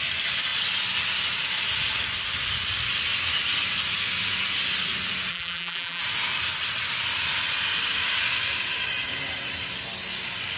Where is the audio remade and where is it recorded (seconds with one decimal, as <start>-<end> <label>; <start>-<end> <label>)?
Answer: 0.0-5.3 recorded; 5.3-6.0 remade; 6.0-10.6 recorded